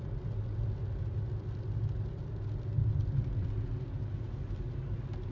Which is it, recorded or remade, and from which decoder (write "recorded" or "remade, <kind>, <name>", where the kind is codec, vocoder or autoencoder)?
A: recorded